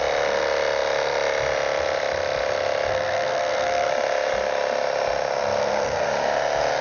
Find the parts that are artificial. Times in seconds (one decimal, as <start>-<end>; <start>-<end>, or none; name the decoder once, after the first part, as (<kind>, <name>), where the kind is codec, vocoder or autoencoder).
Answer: 2.9-3.9 (codec, SNAC); 5.6-6.1